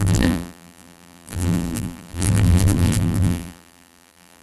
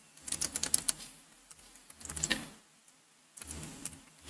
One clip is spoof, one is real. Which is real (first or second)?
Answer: second